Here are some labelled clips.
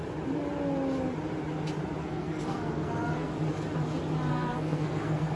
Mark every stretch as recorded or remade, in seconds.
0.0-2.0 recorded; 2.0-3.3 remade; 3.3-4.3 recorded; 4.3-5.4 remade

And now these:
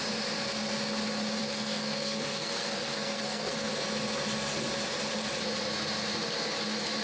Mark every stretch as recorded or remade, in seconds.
0.0-1.4 recorded; 1.4-3.7 remade; 3.7-7.0 recorded

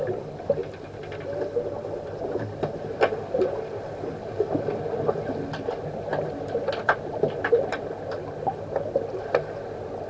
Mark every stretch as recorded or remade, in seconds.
0.0-10.1 recorded

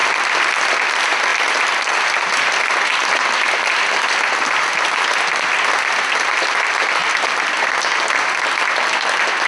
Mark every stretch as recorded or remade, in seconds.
0.0-0.5 remade; 0.5-7.0 recorded; 7.0-8.1 remade; 8.1-9.5 recorded